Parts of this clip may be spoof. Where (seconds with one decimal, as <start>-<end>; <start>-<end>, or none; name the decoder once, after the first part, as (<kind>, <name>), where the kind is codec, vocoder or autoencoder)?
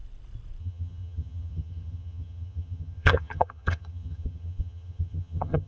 0.6-5.7 (vocoder, HiFi-GAN)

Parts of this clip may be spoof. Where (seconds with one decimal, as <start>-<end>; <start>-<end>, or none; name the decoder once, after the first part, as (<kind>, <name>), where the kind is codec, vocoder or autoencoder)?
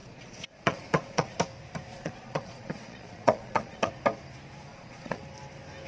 0.0-1.4 (vocoder, Vocos); 1.9-3.9; 4.7-5.2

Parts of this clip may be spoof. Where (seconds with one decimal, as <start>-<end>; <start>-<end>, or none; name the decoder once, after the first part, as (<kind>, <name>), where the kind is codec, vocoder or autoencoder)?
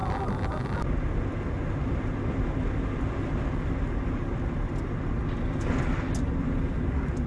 none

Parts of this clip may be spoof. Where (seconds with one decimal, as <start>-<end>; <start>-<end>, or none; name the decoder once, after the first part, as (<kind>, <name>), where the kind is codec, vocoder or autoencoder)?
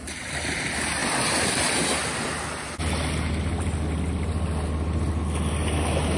none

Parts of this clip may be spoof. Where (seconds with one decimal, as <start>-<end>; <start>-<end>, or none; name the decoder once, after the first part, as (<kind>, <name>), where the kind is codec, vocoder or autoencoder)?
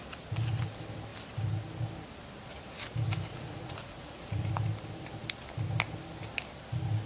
3.3-4.5 (vocoder, Vocos)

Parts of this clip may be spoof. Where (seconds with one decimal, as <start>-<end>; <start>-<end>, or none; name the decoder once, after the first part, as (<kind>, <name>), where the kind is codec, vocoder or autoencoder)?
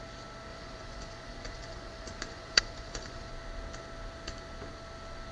0.5-3.3 (vocoder, Vocos)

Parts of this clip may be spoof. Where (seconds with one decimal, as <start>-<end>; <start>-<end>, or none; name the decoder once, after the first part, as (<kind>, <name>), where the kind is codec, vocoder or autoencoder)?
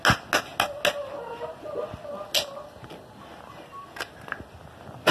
none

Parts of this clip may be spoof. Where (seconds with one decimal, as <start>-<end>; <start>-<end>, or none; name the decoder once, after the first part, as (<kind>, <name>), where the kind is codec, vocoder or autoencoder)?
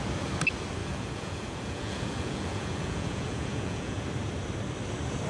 0.8-4.0 (vocoder, Vocos)